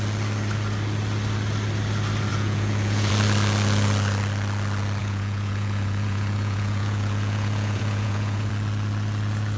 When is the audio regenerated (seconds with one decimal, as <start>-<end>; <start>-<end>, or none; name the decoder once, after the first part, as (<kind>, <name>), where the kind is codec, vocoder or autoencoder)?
2.3-3.1 (vocoder, Vocos); 5.0-8.5